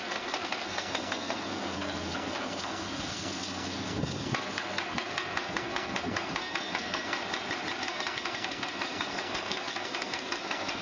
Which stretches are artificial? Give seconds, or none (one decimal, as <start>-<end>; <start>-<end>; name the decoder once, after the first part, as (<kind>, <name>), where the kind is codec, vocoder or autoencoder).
0.0-7.2 (codec, SNAC); 7.8-10.8